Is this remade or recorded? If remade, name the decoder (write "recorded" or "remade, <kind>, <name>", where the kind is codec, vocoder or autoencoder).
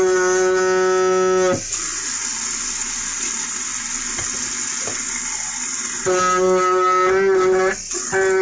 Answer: recorded